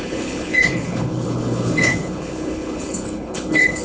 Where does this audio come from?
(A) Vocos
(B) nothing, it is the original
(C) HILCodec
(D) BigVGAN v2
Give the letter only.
C